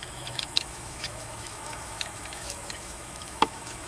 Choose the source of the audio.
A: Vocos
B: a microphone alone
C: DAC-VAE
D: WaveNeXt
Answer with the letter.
C